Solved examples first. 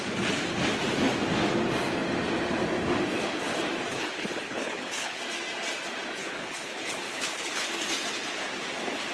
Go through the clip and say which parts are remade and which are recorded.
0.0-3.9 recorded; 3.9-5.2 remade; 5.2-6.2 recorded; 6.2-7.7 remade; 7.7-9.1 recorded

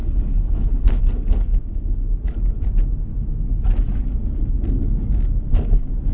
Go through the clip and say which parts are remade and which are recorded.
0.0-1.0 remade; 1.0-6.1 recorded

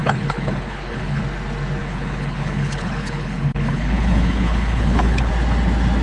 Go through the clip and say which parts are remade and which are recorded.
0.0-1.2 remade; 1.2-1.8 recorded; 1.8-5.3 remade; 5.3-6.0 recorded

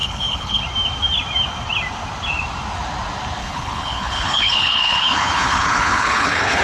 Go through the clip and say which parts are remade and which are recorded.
0.0-0.6 remade; 0.6-3.4 recorded; 3.4-6.6 remade

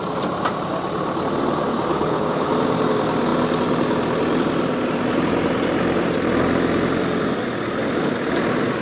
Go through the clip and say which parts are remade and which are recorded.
0.0-1.9 recorded; 1.9-2.5 remade; 2.5-8.8 recorded

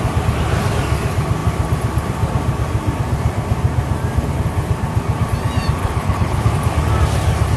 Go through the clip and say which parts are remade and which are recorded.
0.0-5.8 recorded; 5.8-6.5 remade; 6.5-7.6 recorded

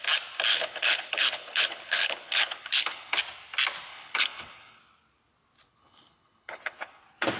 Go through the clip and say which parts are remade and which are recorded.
0.0-0.5 recorded; 0.5-3.2 remade; 3.2-3.9 recorded; 3.9-4.8 remade; 4.8-5.8 recorded; 5.8-7.0 remade; 7.0-7.4 recorded